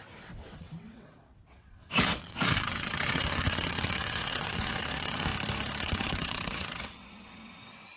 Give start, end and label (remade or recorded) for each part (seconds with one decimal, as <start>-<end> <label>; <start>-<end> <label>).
0.0-5.3 remade; 5.3-5.8 recorded; 5.8-8.0 remade